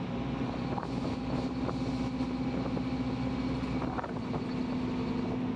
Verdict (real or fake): real